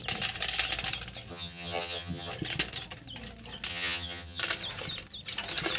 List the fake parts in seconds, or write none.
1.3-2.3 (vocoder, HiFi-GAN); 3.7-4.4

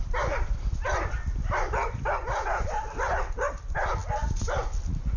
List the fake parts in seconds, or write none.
none

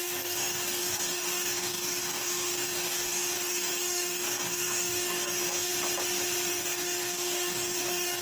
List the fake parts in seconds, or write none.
0.0-5.7 (codec, DAC); 6.5-8.2

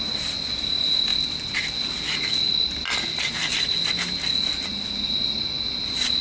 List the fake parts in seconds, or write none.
none

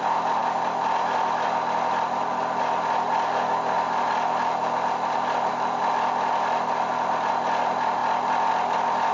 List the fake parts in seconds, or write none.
none

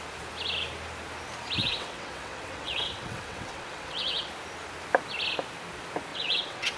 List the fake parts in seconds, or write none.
1.6-4.3 (vocoder, WaveNeXt); 6.1-6.8

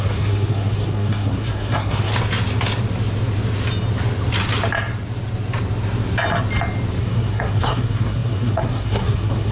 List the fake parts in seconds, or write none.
0.0-2.1 (codec, SNAC); 7.0-9.5